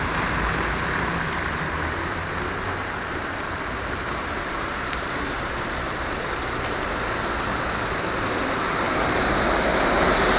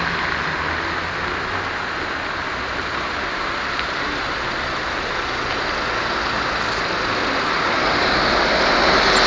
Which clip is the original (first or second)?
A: second